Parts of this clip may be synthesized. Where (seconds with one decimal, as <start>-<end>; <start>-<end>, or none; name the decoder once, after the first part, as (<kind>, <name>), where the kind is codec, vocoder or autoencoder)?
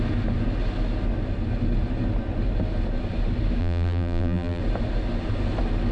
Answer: 3.6-4.6 (vocoder, BigVGAN v2)